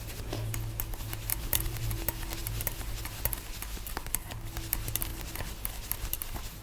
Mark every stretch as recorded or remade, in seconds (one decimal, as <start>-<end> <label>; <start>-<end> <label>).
0.0-1.3 recorded; 1.3-2.0 remade; 2.0-6.6 recorded